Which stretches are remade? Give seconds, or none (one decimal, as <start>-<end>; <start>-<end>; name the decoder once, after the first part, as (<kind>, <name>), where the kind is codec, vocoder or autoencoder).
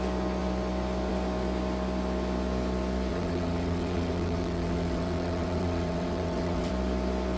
3.1-6.7 (vocoder, WaveNeXt)